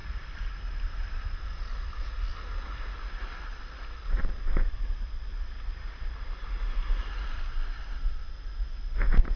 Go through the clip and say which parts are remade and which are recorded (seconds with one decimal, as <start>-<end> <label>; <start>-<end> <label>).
0.0-9.4 recorded